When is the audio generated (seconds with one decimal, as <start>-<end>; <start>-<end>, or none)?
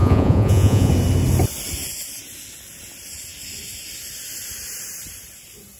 0.0-0.9